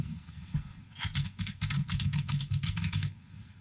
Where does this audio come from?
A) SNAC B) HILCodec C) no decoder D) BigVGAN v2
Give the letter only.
A